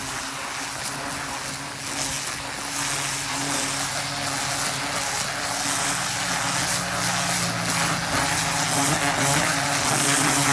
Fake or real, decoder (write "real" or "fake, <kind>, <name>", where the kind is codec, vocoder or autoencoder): real